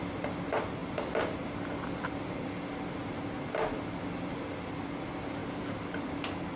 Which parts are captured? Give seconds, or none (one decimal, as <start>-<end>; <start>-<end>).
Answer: 0.0-6.6